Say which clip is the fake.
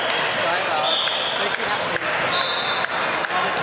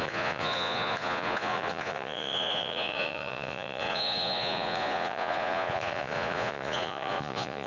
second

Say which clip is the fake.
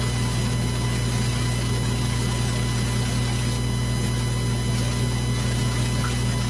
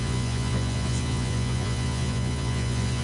second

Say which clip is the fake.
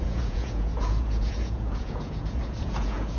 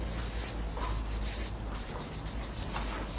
first